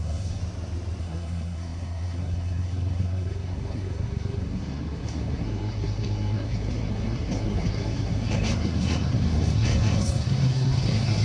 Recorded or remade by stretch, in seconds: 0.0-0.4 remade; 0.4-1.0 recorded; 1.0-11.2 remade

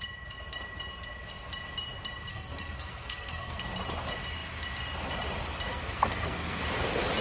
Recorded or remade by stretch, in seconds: 0.0-2.3 recorded; 2.3-3.6 remade; 3.6-5.7 recorded; 5.7-6.6 remade; 6.6-7.2 recorded